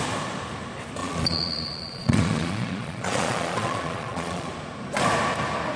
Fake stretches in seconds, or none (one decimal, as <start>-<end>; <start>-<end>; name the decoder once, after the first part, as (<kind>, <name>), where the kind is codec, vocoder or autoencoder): 1.0-4.5 (vocoder, Vocos)